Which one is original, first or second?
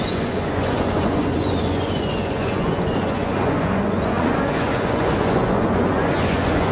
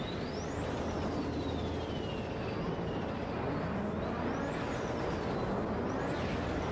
second